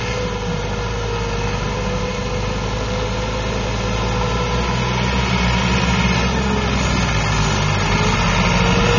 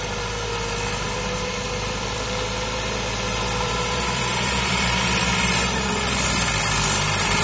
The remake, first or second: second